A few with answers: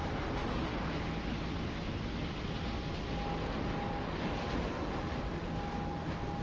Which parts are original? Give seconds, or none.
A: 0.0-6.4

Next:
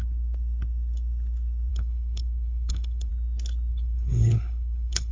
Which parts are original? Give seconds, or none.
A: 0.0-1.7; 3.1-3.7

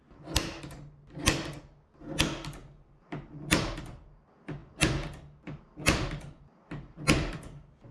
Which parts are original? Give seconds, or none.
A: 0.0-7.9